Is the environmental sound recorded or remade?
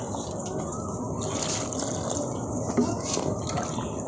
recorded